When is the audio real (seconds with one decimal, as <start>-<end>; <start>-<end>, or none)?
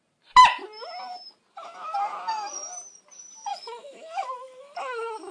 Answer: 0.0-3.5